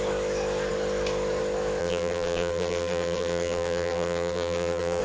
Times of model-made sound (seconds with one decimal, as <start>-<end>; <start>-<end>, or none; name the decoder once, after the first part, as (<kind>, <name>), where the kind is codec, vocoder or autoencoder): 1.8-5.0 (vocoder, BigVGAN v2)